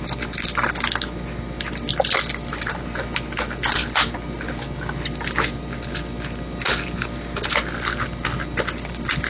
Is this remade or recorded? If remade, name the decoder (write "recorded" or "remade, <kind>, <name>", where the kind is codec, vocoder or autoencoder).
recorded